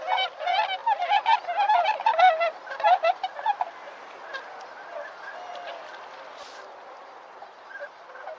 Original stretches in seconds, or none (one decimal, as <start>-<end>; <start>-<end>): 0.0-8.4